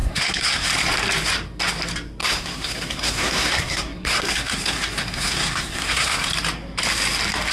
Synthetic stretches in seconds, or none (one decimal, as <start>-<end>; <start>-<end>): 0.0-0.7; 2.2-6.3

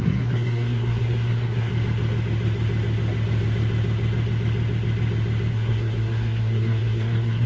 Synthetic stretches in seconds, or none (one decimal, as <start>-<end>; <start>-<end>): 0.0-1.7; 5.5-7.5

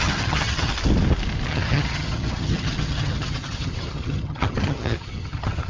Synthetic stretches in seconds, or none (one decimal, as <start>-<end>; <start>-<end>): 0.0-0.7; 1.5-5.7

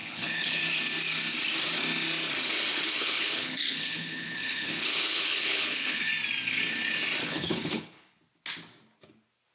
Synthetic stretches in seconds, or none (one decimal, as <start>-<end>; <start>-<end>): 0.0-0.6; 2.7-6.1; 7.2-8.2

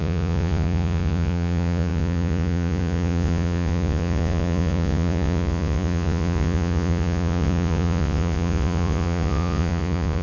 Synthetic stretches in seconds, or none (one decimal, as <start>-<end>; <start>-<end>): 0.0-10.2

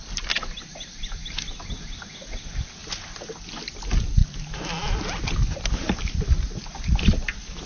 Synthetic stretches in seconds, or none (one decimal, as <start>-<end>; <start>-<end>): 4.2-5.0